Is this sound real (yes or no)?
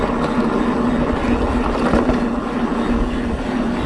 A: yes